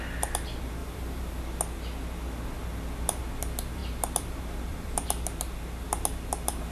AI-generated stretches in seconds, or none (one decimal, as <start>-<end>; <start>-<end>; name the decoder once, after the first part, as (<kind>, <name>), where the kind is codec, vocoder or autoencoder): 0.8-1.4 (vocoder, BigVGAN v2)